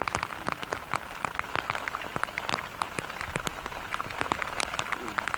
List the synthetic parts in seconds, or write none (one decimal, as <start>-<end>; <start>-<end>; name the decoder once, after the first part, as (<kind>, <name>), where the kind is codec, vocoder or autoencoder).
0.6-2.8 (vocoder, BigVGAN v2)